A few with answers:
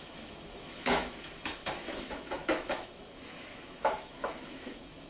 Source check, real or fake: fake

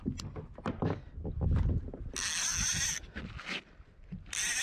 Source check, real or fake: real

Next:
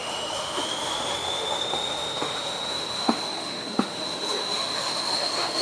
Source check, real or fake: fake